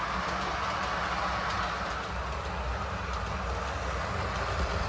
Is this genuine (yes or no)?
yes